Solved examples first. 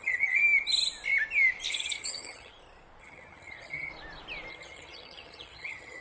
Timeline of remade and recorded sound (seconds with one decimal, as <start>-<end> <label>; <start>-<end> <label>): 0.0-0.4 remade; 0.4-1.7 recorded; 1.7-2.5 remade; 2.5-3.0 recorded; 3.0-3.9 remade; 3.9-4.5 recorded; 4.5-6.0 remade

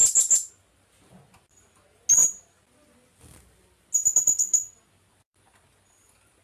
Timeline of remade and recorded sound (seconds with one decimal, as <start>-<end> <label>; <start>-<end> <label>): 0.0-2.2 recorded; 2.2-3.2 remade; 3.2-6.4 recorded

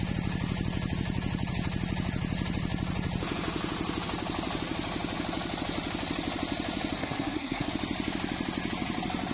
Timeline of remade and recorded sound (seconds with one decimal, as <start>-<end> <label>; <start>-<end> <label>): 0.0-7.0 recorded; 7.0-7.7 remade; 7.7-9.3 recorded

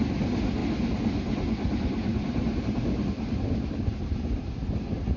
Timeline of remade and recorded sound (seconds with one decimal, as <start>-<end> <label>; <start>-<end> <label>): 0.0-5.2 recorded

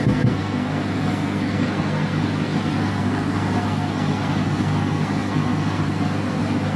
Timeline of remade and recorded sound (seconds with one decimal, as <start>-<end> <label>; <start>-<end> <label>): 0.0-6.8 remade

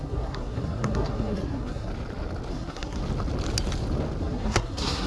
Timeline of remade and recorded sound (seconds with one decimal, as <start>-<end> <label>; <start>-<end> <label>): 0.0-1.9 remade; 1.9-2.5 recorded; 2.5-3.0 remade; 3.0-4.2 recorded; 4.2-5.1 remade

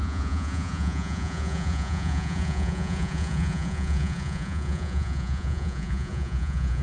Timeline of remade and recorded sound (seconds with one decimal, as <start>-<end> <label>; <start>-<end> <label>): 0.0-6.8 remade